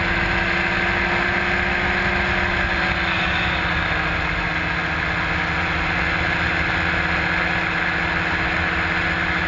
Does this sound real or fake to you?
real